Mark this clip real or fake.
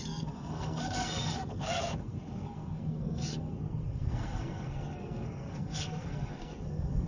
fake